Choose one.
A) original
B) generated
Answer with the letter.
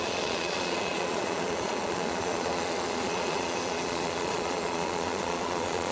B